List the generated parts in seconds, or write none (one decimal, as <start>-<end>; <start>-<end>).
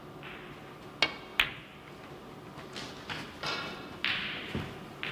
none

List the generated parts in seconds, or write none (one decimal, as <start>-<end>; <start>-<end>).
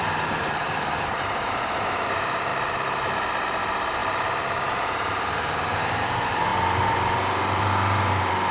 0.0-2.5; 3.6-4.0; 4.7-6.5; 7.6-8.5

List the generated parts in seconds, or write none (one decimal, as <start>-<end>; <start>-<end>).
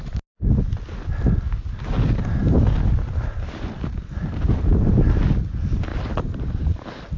5.9-6.8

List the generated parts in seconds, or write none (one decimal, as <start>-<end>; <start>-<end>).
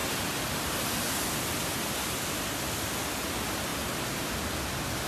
none